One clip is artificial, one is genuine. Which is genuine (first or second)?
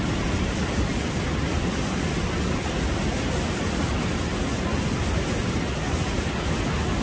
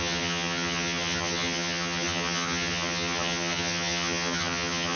first